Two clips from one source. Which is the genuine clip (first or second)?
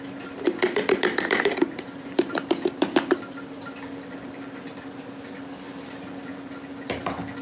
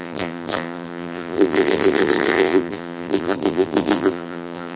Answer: first